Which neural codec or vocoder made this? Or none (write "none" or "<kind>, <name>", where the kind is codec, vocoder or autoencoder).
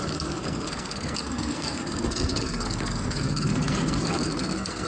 codec, SNAC